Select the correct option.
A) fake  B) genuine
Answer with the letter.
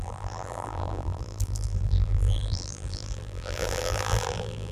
A